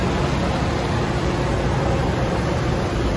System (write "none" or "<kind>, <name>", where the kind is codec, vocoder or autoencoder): none